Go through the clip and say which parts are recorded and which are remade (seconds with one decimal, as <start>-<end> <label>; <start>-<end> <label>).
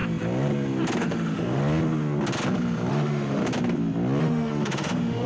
0.0-1.0 recorded; 1.0-1.6 remade; 1.6-2.9 recorded; 2.9-3.4 remade; 3.4-4.2 recorded; 4.2-5.3 remade